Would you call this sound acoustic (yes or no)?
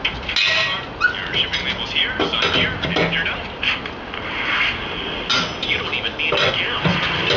yes